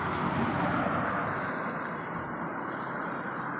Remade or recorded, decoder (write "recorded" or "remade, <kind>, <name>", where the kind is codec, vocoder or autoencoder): recorded